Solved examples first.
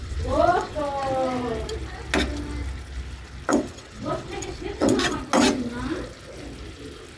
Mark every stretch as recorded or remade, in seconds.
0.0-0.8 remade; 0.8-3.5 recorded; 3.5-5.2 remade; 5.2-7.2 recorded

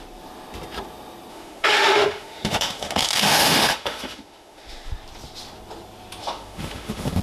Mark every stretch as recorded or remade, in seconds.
0.0-1.3 recorded; 1.3-4.9 remade; 4.9-6.2 recorded; 6.2-7.2 remade

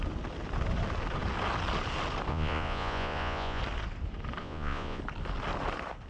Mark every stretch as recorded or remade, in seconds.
0.0-2.3 recorded; 2.3-3.6 remade; 3.6-4.4 recorded; 4.4-5.0 remade; 5.0-6.1 recorded